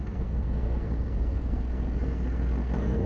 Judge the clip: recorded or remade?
remade